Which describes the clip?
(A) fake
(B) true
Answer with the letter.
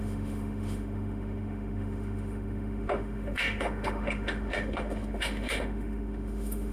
A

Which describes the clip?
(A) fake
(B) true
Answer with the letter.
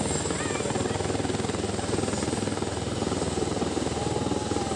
B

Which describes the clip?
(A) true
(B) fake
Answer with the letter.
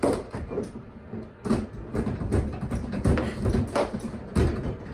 A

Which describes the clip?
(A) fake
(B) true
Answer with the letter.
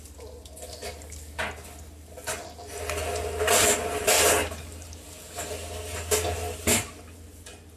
A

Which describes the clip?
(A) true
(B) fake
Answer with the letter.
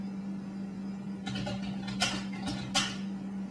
A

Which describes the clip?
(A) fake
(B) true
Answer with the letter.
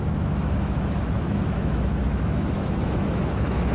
A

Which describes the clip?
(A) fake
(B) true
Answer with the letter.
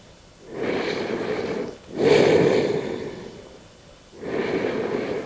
B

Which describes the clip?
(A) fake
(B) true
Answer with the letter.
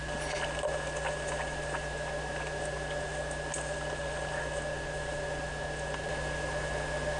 B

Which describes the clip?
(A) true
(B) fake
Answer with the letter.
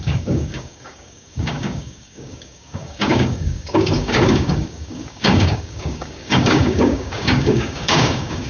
B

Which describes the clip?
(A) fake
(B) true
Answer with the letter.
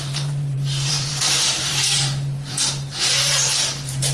A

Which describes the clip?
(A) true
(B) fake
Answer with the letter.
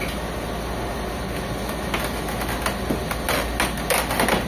A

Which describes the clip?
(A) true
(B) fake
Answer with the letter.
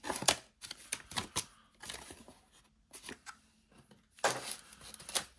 A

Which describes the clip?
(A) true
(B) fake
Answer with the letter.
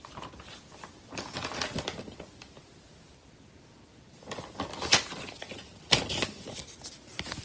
A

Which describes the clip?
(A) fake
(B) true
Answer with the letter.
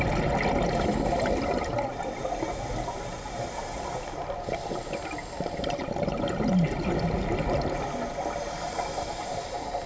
B